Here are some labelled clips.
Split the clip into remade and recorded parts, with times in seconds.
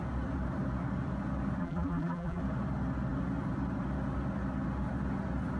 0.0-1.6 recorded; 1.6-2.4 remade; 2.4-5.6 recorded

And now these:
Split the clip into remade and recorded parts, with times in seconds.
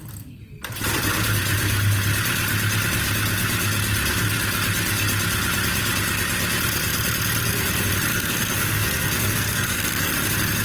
0.0-8.1 recorded; 8.1-10.1 remade; 10.1-10.6 recorded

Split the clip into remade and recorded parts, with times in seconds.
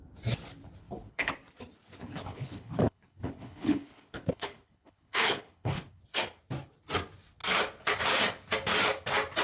0.0-0.8 recorded; 0.8-1.3 remade; 1.3-2.0 recorded; 2.0-6.0 remade; 6.0-9.4 recorded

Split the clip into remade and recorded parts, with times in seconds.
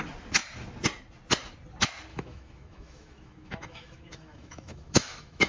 0.0-2.1 recorded; 2.1-5.5 remade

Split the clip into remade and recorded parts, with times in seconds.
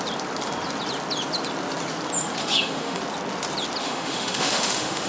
0.0-2.4 recorded; 2.4-3.0 remade; 3.0-3.8 recorded; 3.8-5.1 remade